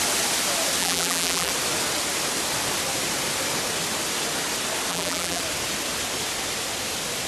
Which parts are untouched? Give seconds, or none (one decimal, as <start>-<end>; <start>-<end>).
0.0-0.8; 1.5-4.9; 5.4-7.3